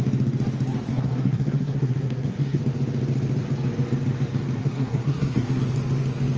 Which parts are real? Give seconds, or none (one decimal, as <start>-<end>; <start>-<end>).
0.0-0.9; 2.6-4.6; 5.6-6.4